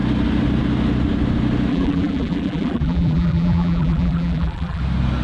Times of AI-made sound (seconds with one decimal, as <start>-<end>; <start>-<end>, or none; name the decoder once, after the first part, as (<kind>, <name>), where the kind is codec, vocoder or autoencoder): 1.7-4.8 (vocoder, BigVGAN v2)